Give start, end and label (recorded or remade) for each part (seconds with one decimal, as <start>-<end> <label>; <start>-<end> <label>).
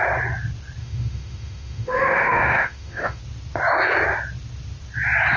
0.0-0.8 recorded; 0.8-3.2 remade; 3.2-5.4 recorded